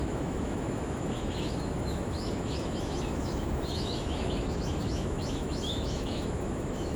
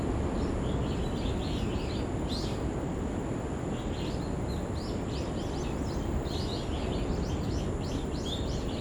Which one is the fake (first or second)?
first